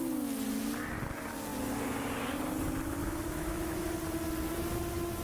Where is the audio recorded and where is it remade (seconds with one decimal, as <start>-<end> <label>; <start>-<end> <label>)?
0.0-3.0 recorded; 3.0-3.9 remade; 3.9-5.2 recorded